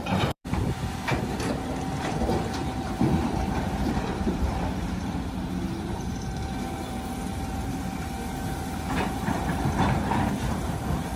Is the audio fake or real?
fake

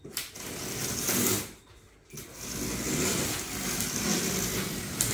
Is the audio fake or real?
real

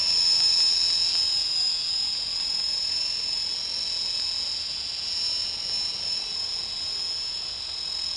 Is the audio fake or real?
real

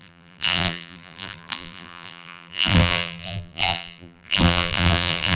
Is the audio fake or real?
fake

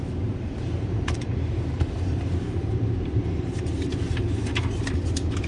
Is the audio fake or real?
fake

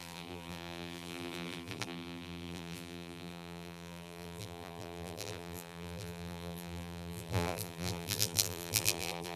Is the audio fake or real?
fake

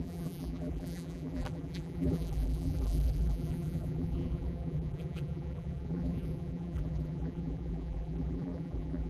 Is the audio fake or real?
fake